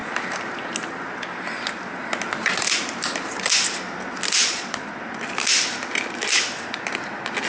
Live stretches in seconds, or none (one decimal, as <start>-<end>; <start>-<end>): 0.0-4.4; 5.0-7.5